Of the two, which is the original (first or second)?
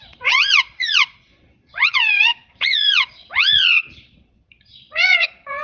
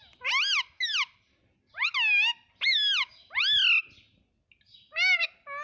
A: second